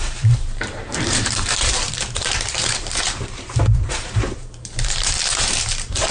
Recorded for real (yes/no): no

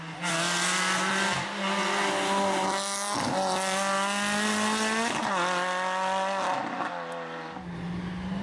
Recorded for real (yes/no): yes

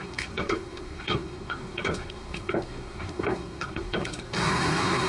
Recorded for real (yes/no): no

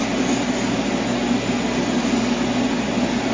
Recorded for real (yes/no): yes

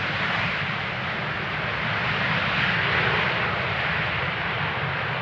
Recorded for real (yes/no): yes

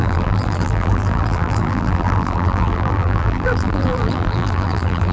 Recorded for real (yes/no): no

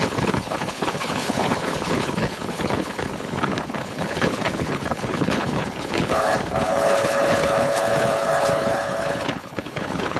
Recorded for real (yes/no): no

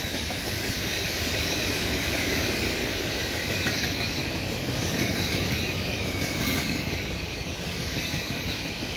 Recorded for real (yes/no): no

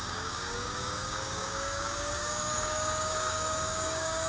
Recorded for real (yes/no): no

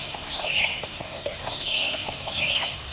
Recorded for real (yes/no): no